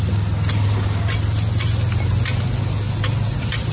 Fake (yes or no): no